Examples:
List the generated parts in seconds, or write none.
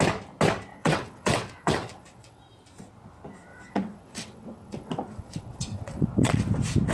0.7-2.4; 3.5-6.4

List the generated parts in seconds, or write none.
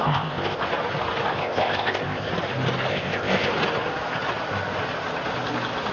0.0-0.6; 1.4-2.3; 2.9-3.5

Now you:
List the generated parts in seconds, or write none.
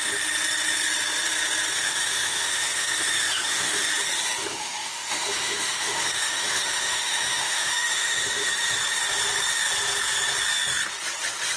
1.7-3.9; 4.4-8.5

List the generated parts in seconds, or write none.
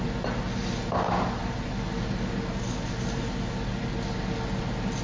none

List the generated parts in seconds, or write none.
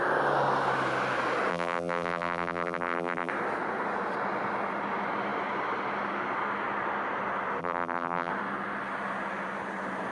1.5-3.3; 7.6-8.3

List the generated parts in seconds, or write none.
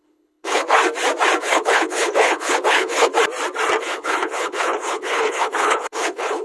0.0-0.8; 1.4-3.1; 3.8-6.4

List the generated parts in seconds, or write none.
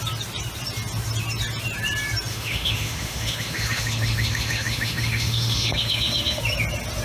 2.3-6.4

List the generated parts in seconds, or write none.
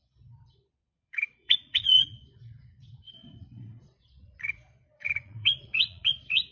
0.0-6.5